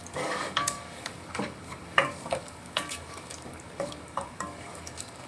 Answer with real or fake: fake